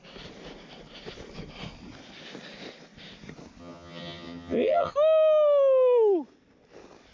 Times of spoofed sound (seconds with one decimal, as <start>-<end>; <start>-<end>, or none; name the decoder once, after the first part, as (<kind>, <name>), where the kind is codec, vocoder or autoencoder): 3.6-4.9 (vocoder, HiFi-GAN)

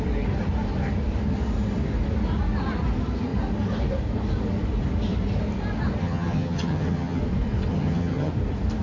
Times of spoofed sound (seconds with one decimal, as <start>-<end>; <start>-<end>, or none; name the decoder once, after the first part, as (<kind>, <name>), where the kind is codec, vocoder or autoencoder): 6.0-7.2 (vocoder, HiFi-GAN); 7.7-8.3

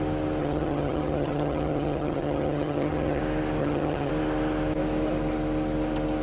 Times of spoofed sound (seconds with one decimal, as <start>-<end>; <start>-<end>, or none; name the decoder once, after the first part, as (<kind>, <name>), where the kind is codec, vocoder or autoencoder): 0.4-3.2 (vocoder, HiFi-GAN); 3.6-4.1

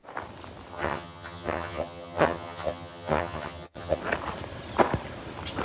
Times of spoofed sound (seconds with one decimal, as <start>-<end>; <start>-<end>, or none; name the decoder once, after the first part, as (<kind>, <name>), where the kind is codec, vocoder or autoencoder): 0.7-4.0 (vocoder, HiFi-GAN)

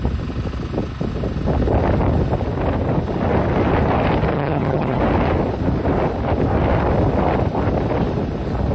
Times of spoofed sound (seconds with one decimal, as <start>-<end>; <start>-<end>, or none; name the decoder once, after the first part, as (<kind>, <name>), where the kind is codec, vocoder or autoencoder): 4.3-5.0 (vocoder, HiFi-GAN)